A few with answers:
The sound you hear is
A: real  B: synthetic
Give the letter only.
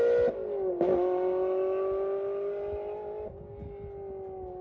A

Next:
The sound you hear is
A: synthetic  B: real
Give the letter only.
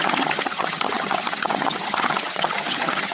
A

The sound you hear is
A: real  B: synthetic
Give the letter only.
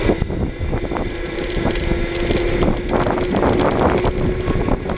A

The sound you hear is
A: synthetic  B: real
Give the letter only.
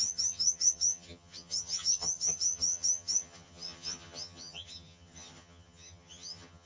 A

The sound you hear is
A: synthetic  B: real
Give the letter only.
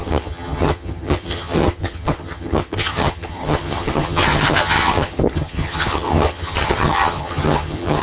A